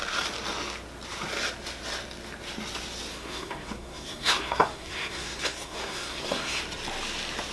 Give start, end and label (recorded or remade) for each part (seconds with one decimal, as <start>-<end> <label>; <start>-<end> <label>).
0.0-3.1 recorded; 3.1-6.6 remade; 6.6-7.5 recorded